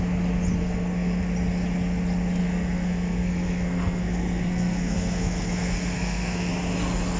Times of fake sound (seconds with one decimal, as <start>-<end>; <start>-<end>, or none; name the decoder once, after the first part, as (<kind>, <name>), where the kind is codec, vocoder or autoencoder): 0.6-1.2 (codec, SNAC); 2.4-6.5

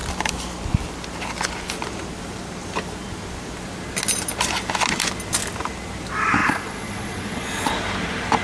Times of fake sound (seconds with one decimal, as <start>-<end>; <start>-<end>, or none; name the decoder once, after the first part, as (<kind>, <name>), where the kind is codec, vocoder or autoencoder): 6.4-7.7 (vocoder, Vocos)